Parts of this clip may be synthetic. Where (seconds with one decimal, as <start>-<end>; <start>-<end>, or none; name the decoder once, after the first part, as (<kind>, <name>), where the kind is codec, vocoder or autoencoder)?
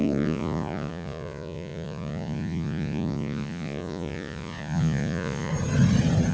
0.0-5.5 (vocoder, Vocos)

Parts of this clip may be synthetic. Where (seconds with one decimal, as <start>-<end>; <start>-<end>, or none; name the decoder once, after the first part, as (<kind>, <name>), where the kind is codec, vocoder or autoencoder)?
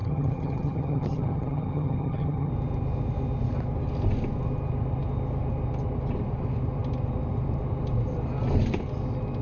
0.0-2.5 (vocoder, HiFi-GAN)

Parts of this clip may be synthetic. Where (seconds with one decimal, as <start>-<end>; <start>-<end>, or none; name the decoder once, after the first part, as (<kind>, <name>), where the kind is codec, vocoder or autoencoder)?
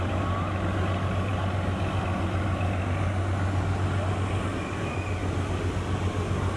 none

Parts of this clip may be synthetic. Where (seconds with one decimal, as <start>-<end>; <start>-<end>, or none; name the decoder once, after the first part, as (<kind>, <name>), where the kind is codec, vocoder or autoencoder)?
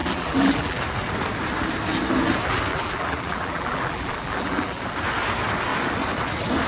0.0-0.8 (vocoder, BigVGAN v2); 2.7-4.8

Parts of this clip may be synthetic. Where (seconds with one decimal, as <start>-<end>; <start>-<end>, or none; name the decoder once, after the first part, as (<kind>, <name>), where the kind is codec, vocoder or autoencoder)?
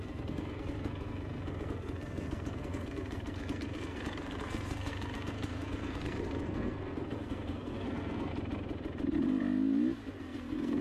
0.0-8.3 (codec, SNAC); 10.2-10.8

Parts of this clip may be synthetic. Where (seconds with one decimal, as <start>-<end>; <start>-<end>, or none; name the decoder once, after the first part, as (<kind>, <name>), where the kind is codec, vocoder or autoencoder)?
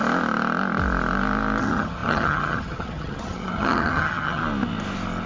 1.6-4.4 (vocoder, HiFi-GAN)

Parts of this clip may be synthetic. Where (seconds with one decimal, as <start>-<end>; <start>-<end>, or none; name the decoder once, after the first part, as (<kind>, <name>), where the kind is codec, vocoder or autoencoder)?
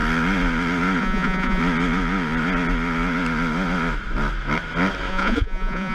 1.0-1.6 (vocoder, Vocos); 5.1-5.9